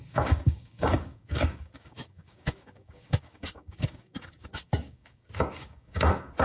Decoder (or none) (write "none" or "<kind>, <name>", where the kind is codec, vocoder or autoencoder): codec, DAC